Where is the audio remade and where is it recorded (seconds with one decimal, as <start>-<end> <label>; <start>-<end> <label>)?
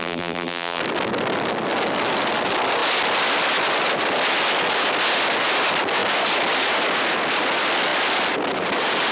0.0-0.8 remade; 0.8-9.1 recorded